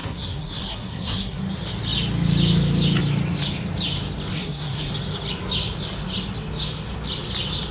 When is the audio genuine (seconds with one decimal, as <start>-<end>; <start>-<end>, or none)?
1.4-4.3; 4.9-7.7